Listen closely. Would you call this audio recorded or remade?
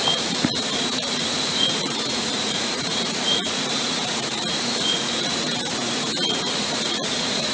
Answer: remade